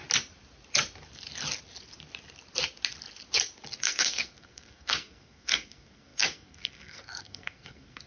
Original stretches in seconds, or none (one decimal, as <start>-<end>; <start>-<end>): 0.0-3.8